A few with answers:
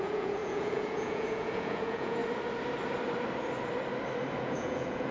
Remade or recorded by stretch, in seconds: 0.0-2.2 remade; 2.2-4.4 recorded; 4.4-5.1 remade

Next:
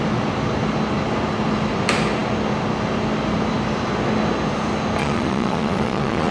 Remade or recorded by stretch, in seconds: 0.0-5.0 recorded; 5.0-6.3 remade

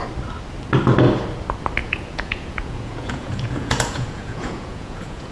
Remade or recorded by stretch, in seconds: 0.0-1.8 recorded; 1.8-5.3 remade

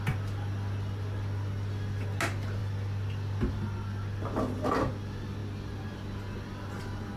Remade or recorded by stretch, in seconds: 0.0-7.2 recorded

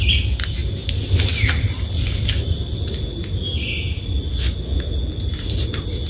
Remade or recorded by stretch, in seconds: 0.0-6.1 recorded